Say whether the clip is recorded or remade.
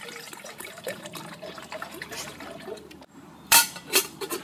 remade